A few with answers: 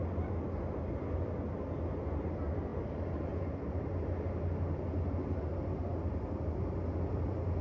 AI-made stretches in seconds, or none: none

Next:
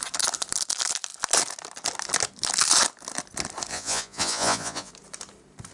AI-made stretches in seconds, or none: 3.7-4.9 (vocoder, Vocos)

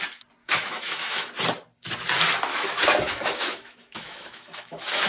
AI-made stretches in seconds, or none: 0.4-1.3 (autoencoder, DAC-VAE); 2.5-5.1

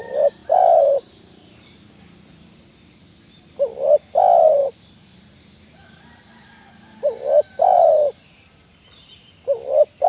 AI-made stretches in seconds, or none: 0.4-2.7 (vocoder, BigVGAN v2); 4.6-9.3